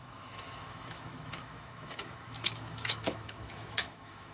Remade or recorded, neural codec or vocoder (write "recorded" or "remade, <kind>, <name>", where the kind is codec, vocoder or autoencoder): remade, autoencoder, DAC-VAE